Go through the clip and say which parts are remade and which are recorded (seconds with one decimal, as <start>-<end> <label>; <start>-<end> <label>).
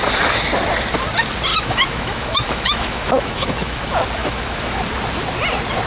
0.0-1.5 recorded; 1.5-3.8 remade; 3.8-4.2 recorded; 4.2-4.8 remade; 4.8-5.9 recorded